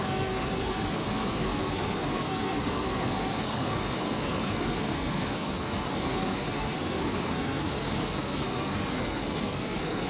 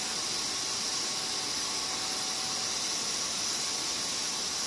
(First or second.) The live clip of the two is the second